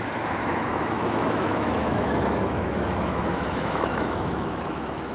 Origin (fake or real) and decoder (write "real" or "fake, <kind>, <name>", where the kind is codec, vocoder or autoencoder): fake, autoencoder, DAC-VAE